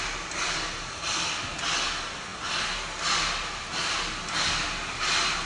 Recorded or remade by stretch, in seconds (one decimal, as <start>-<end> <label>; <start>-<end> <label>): 0.0-5.5 recorded